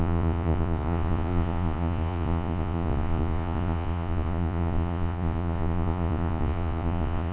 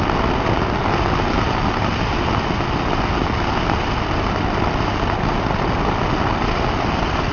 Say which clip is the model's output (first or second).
first